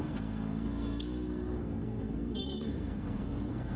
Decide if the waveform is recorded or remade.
remade